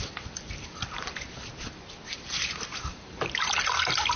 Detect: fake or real real